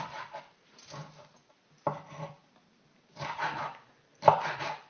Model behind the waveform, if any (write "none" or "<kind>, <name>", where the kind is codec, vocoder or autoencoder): none